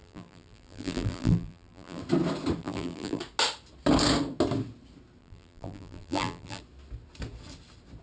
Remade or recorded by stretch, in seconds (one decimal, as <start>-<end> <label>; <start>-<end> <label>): 0.0-2.0 remade; 2.0-2.6 recorded; 2.6-3.2 remade; 3.2-5.2 recorded; 5.2-6.6 remade; 6.6-8.0 recorded